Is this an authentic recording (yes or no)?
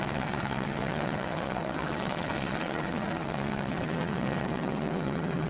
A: no